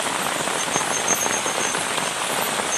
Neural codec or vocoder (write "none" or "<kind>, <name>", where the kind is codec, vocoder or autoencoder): none